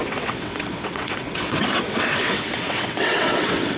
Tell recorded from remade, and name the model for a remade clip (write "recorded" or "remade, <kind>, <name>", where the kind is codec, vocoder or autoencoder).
remade, vocoder, WaveNeXt